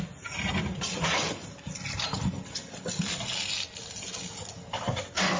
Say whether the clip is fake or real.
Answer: real